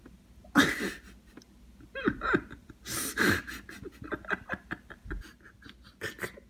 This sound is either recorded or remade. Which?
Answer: recorded